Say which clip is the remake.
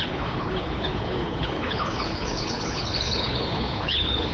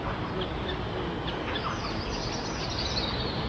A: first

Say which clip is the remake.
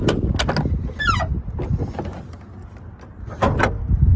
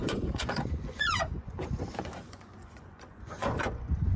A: second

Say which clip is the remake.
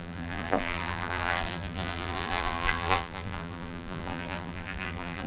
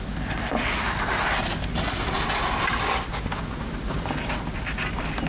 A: first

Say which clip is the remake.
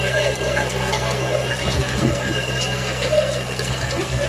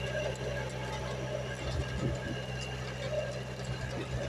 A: first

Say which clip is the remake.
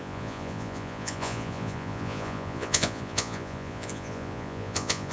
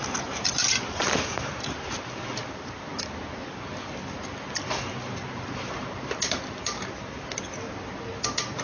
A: first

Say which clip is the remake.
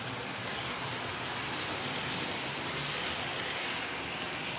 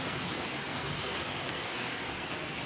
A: second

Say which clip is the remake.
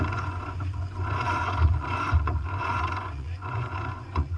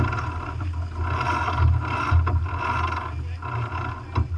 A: first